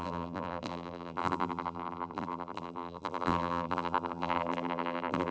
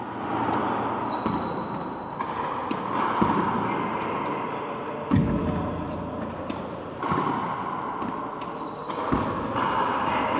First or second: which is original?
second